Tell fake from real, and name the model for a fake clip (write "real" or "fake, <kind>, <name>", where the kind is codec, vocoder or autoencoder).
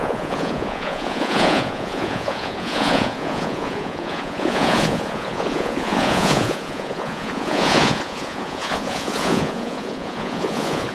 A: fake, vocoder, Vocos